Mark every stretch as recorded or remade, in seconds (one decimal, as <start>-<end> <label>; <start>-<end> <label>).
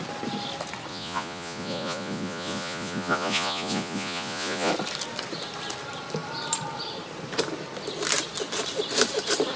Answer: 0.0-0.9 recorded; 0.9-4.7 remade; 4.7-9.6 recorded